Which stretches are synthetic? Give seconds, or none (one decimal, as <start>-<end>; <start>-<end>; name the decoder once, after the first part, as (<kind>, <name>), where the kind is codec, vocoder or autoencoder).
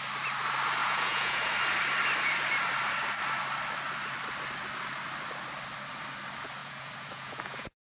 0.8-1.5 (vocoder, Vocos); 6.6-7.9